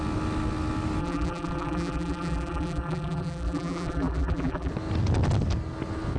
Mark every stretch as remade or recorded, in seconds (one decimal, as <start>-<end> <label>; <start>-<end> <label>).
0.0-1.0 recorded; 1.0-4.7 remade; 4.7-6.2 recorded